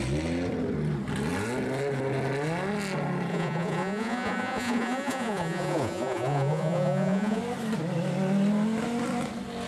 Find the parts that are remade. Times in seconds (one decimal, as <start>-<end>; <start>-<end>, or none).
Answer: 3.3-7.4